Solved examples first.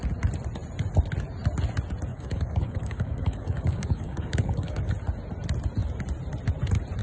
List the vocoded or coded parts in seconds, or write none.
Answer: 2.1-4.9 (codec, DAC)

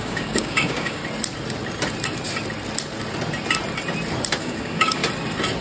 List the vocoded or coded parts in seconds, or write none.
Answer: 0.0-1.0 (codec, DAC); 4.4-5.0

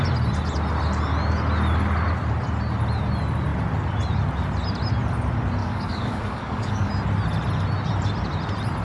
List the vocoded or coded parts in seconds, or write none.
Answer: 5.6-6.9 (codec, DAC)

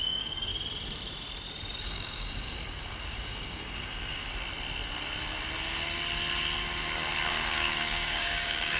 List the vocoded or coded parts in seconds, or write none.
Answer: 0.0-0.5 (codec, DAC); 1.8-4.3; 7.3-8.8